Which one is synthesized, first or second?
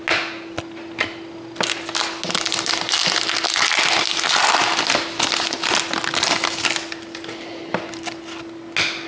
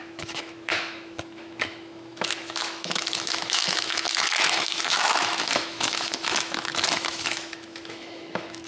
second